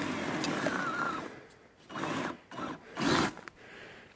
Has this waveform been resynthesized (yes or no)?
no